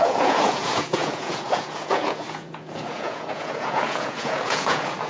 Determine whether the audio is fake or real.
fake